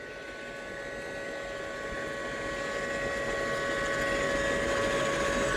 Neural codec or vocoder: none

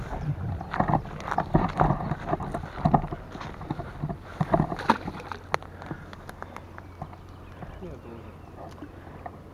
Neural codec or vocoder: none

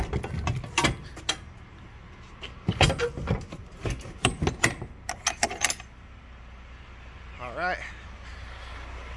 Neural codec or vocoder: none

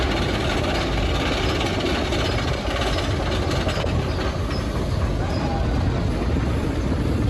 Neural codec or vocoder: none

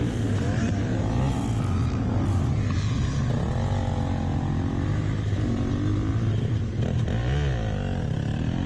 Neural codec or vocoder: none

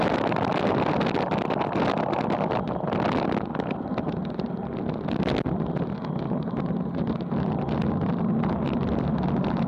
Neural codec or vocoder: none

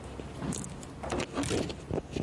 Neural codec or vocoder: none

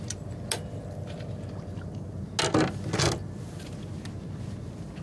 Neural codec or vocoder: none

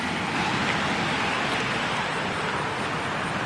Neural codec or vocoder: none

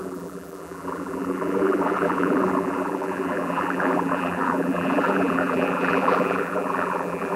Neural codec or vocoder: vocoder, BigVGAN v2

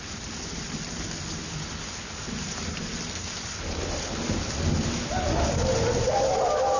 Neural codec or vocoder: none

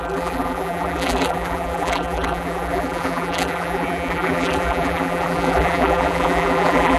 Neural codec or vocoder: vocoder, BigVGAN v2